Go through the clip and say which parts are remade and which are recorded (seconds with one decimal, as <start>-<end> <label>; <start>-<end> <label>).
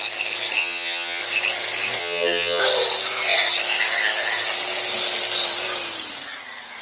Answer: 0.0-0.6 recorded; 0.6-1.2 remade; 1.2-2.0 recorded; 2.0-2.6 remade; 2.6-6.8 recorded